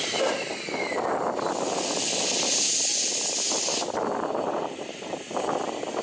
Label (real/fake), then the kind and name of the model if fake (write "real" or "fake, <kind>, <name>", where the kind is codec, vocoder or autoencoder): real